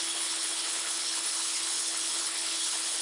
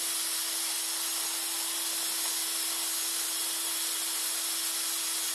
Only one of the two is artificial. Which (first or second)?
first